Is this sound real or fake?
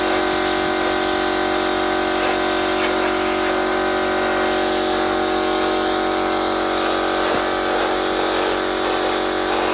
real